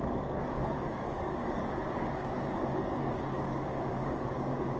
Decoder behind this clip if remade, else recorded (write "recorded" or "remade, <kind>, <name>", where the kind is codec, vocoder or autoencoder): remade, codec, DAC